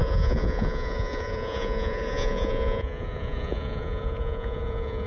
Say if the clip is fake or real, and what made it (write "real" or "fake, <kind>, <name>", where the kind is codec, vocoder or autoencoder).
fake, vocoder, Vocos